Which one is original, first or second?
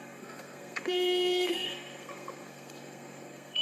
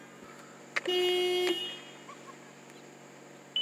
second